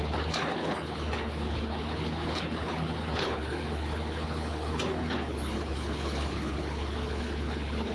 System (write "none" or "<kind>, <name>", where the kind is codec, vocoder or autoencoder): codec, HILCodec